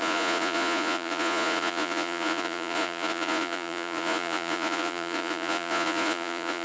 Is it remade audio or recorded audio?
remade